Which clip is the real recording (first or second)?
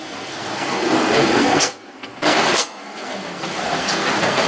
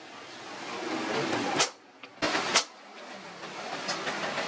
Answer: second